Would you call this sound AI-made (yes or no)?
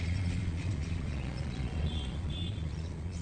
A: yes